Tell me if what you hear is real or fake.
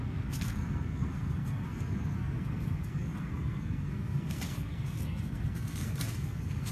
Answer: fake